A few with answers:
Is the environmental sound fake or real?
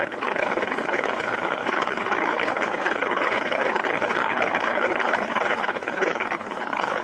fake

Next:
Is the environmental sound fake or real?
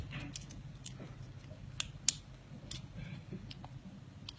real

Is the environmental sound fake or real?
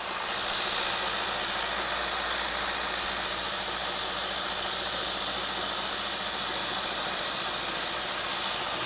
real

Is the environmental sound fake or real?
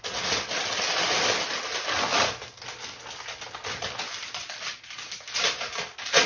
real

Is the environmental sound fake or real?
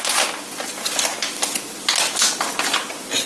real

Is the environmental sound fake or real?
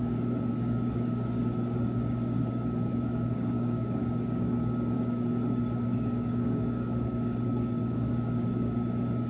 fake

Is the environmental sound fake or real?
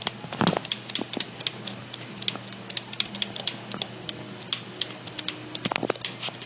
real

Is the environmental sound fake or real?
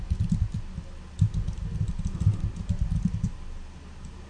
real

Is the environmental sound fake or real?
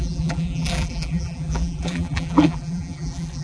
fake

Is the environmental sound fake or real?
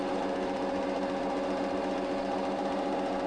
real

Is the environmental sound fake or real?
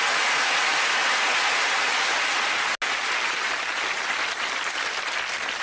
real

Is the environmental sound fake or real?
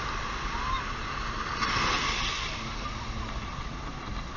real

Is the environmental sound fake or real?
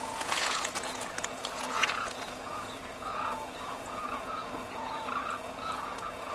fake